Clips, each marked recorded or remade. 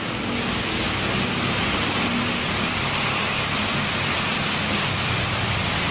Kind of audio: recorded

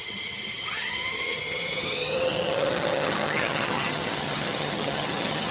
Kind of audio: remade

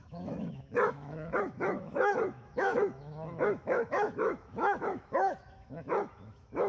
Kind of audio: remade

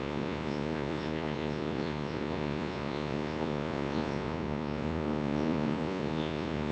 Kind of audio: remade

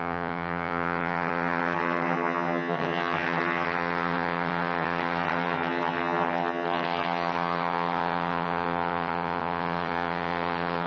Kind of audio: remade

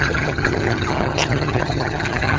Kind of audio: remade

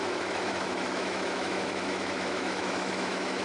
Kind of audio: remade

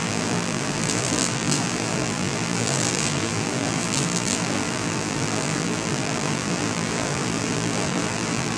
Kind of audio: remade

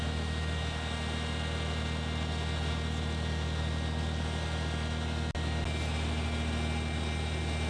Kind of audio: recorded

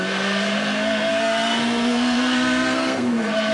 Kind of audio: remade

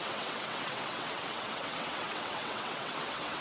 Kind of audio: remade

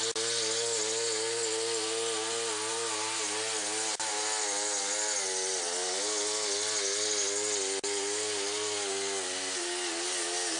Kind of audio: recorded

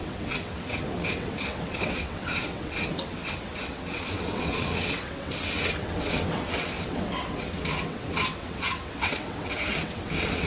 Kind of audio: remade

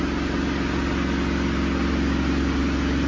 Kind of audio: recorded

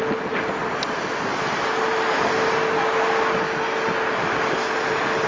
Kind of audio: recorded